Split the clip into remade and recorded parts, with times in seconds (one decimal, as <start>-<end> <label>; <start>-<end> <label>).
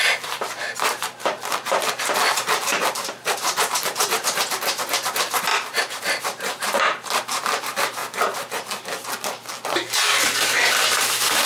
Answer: 0.0-5.5 remade; 5.5-6.0 recorded; 6.0-8.0 remade; 8.0-10.2 recorded; 10.2-11.5 remade